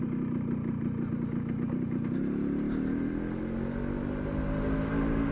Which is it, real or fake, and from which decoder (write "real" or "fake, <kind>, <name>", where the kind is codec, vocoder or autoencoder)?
real